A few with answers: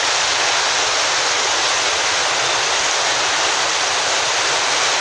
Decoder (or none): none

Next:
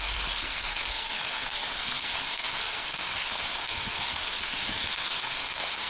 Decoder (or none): codec, SNAC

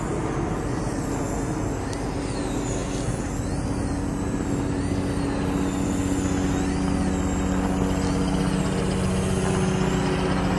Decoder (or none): none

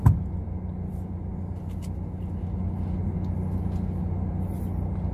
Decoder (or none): none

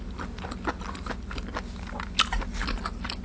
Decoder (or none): none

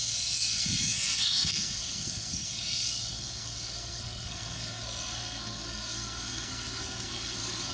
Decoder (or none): codec, SNAC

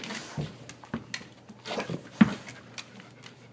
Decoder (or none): none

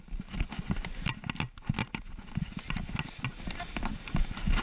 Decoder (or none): none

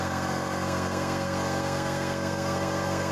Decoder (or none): codec, SNAC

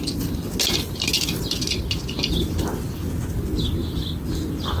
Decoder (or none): none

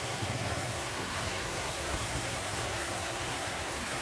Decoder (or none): codec, SNAC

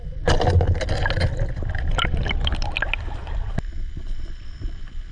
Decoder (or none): none